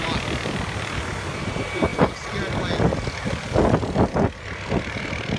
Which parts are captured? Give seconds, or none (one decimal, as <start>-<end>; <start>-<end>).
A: 0.0-5.4